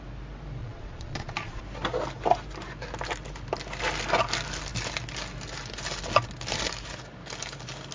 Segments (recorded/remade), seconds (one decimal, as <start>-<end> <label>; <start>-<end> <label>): 0.0-0.6 recorded; 0.6-1.6 remade; 1.6-7.9 recorded